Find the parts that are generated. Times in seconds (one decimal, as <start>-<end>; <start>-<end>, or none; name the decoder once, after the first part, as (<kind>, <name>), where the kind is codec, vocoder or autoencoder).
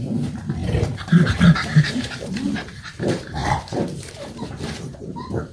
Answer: 0.0-5.5 (vocoder, BigVGAN v2)